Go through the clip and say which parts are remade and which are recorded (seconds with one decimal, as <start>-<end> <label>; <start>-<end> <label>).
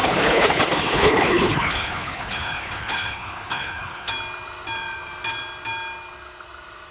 0.0-4.1 remade; 4.1-6.9 recorded